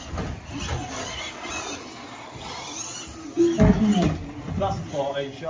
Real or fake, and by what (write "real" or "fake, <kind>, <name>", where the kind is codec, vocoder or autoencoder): real